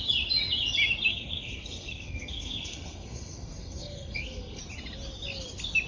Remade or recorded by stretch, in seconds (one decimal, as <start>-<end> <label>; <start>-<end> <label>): 0.0-1.1 recorded; 1.1-4.6 remade; 4.6-5.9 recorded